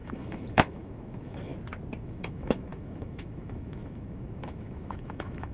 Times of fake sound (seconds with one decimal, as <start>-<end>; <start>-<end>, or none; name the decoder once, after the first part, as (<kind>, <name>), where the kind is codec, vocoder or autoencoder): 0.0-1.5 (autoencoder, DAC-VAE); 2.0-5.5